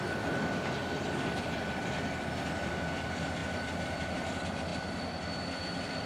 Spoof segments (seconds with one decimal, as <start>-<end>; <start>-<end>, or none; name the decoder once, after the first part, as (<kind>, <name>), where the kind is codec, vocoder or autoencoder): none